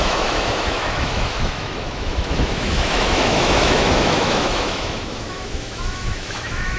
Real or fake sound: fake